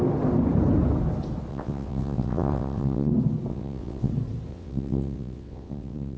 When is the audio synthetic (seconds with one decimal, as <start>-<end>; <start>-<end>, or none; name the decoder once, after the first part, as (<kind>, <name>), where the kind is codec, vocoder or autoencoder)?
1.5-3.1 (vocoder, WaveNeXt); 3.5-4.1; 4.5-6.2